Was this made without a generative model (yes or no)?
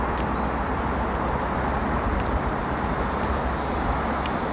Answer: yes